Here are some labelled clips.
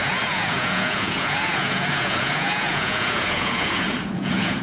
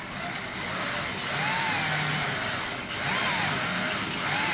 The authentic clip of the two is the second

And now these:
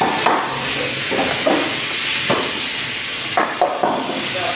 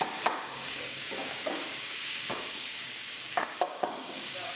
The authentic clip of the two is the first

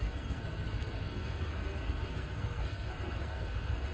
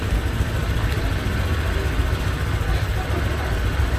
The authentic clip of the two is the second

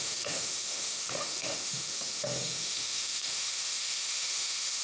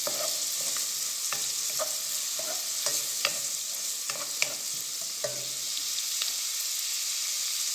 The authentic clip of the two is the second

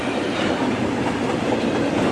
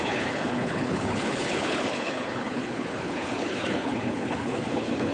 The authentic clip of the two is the first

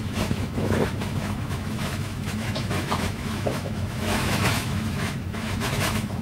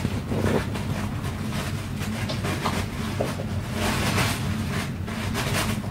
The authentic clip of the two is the second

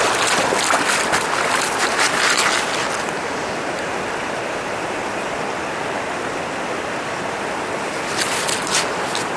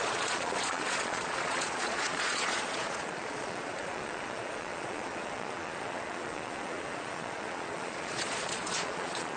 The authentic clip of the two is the first